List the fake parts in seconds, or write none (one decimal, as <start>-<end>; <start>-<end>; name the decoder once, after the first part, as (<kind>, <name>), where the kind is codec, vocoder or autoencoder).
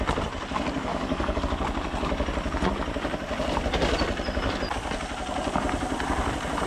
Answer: 0.9-1.4 (codec, DAC)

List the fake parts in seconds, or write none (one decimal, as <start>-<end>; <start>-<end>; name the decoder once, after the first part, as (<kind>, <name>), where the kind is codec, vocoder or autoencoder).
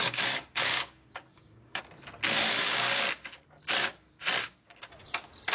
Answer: 0.0-1.8 (codec, DAC); 2.4-3.0; 4.4-4.9